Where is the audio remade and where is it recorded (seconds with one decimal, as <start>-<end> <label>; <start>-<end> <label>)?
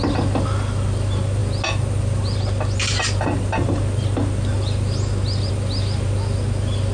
0.0-6.9 recorded